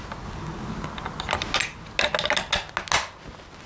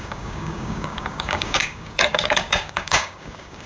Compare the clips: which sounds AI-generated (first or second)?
second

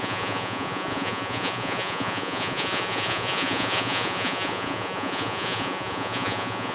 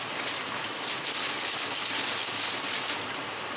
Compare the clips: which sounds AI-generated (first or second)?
first